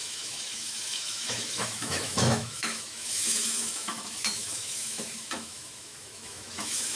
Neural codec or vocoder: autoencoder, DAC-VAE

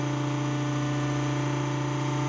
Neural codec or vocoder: none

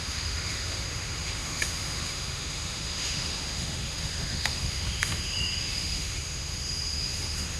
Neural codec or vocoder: autoencoder, DAC-VAE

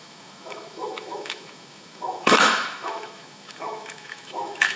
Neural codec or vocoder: autoencoder, DAC-VAE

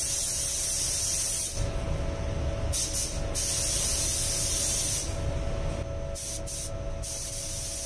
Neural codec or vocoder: none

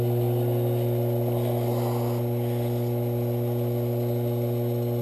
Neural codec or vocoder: none